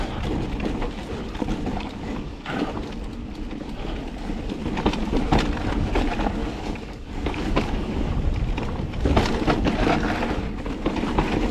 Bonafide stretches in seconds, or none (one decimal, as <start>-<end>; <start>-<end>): 0.0-1.7; 2.7-6.4; 8.1-11.5